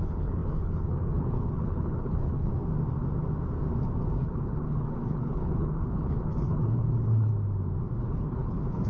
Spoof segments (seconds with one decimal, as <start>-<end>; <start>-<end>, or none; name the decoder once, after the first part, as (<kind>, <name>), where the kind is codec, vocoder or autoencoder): 0.0-2.5 (codec, HILCodec); 4.2-7.3; 8.0-8.9